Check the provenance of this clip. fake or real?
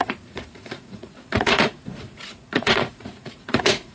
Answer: fake